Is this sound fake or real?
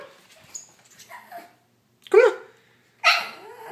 real